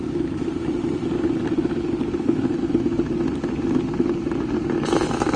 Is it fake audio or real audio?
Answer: real